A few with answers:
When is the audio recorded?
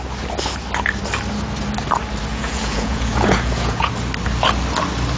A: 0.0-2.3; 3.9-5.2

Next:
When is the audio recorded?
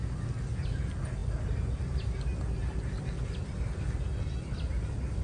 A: 0.0-5.2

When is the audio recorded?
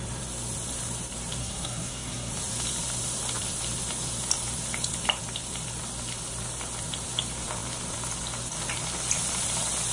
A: 0.0-1.4; 2.3-9.9